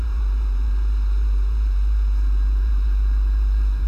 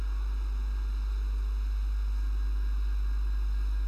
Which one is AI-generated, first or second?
first